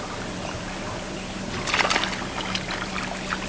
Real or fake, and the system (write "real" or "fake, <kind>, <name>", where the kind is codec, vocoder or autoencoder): real